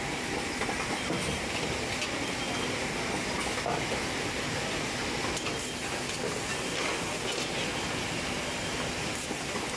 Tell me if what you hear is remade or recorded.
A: recorded